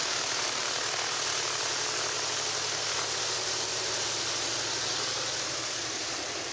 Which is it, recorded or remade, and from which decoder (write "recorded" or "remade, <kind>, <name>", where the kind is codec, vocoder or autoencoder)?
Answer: recorded